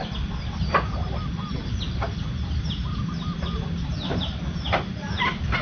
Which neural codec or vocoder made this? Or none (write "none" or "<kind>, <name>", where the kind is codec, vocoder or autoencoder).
none